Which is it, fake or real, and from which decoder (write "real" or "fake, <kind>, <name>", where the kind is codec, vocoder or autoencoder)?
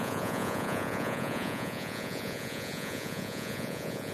fake, vocoder, Vocos